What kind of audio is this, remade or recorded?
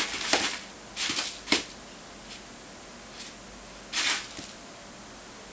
recorded